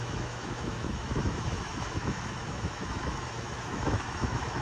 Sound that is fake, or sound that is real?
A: fake